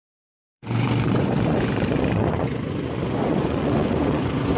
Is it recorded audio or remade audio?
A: remade